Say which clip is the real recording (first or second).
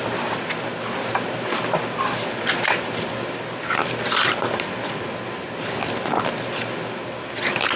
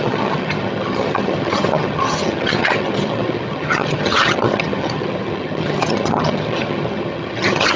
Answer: first